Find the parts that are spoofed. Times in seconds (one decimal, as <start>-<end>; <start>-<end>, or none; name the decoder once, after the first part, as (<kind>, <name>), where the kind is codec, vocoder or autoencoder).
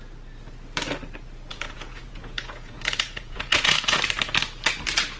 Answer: 1.5-4.0 (vocoder, Vocos)